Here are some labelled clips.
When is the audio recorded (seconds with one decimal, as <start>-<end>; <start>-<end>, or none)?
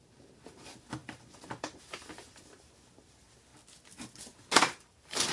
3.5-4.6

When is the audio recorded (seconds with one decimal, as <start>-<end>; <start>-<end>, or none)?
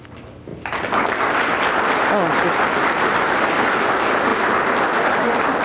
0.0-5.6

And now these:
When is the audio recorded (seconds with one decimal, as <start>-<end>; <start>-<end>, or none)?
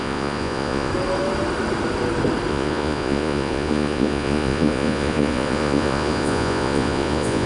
0.9-2.5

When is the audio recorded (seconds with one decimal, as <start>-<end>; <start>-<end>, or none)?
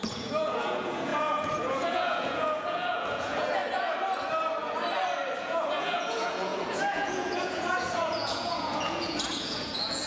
3.6-5.4